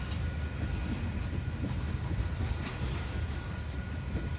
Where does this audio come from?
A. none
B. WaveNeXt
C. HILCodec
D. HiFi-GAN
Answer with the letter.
A